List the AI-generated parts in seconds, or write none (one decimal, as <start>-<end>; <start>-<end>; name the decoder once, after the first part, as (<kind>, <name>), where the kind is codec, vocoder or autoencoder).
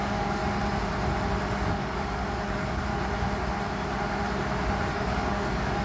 0.0-0.4 (codec, DAC); 1.7-2.9; 4.9-5.8